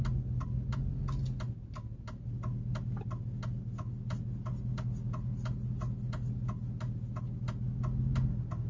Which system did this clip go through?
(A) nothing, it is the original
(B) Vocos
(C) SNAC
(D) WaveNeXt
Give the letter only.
A